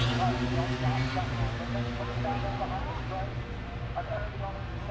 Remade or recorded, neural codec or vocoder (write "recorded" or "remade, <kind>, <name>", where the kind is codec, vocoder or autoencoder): recorded